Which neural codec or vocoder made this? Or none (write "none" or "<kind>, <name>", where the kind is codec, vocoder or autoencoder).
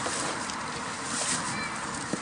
none